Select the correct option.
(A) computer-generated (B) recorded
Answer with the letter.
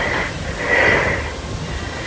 B